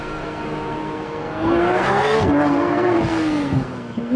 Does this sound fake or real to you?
fake